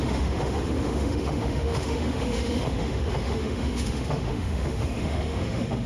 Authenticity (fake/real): fake